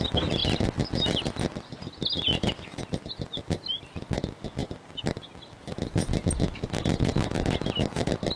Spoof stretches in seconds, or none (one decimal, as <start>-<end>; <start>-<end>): none